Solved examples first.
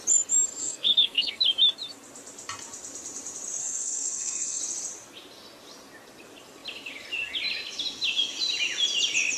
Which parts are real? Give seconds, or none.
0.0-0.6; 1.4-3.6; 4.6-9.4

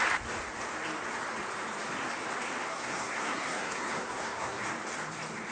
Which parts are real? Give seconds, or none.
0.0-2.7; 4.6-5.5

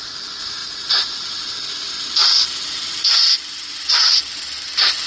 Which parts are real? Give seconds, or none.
0.0-5.1